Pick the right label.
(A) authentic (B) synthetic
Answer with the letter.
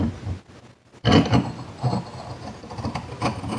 A